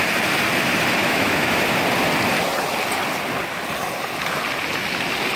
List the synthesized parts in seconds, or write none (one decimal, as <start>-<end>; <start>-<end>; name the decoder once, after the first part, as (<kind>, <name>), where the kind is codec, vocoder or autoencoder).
1.0-1.6 (autoencoder, DAC-VAE)